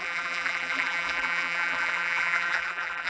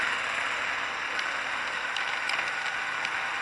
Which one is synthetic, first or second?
first